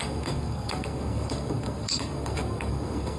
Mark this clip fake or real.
fake